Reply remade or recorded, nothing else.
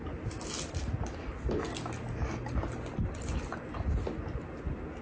recorded